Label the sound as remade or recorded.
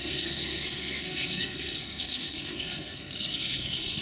remade